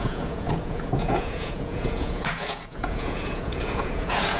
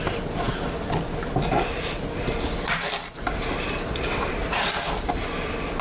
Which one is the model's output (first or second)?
first